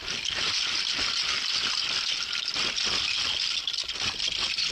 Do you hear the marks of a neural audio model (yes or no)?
no